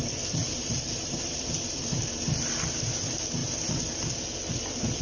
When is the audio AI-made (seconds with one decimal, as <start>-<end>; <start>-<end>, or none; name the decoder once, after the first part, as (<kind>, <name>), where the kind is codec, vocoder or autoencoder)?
0.4-1.8 (vocoder, BigVGAN v2)